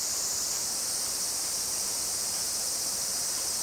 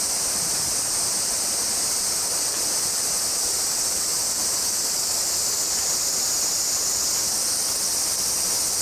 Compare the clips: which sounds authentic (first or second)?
second